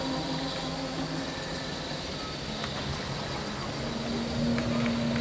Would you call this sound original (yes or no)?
yes